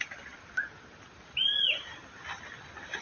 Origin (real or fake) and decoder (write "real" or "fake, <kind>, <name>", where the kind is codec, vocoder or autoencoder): real